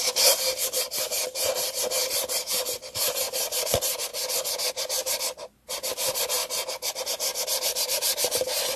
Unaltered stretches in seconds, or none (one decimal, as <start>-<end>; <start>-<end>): 4.1-4.7; 6.4-6.9